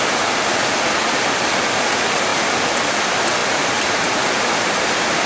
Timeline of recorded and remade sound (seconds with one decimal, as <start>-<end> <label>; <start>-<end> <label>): 0.0-3.4 recorded; 3.4-5.3 remade